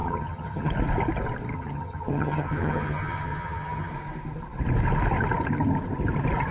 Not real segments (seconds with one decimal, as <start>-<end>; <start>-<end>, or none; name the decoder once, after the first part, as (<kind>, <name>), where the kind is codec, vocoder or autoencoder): 0.0-0.7 (vocoder, HiFi-GAN); 1.5-3.9